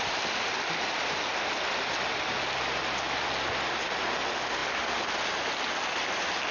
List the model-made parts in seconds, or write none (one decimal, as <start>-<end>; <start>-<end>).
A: none